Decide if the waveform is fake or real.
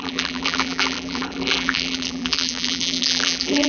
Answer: fake